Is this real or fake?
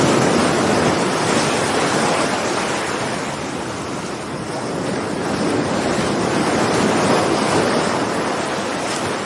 real